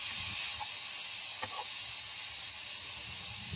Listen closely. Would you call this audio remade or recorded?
recorded